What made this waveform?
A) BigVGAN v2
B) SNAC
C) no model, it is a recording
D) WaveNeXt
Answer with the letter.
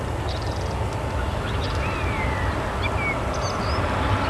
C